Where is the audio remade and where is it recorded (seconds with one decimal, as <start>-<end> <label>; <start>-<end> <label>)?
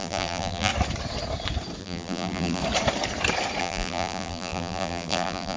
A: 0.0-0.7 remade; 0.7-1.8 recorded; 1.8-2.6 remade; 2.6-3.6 recorded; 3.6-5.6 remade